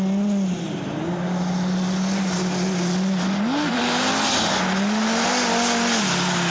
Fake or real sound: real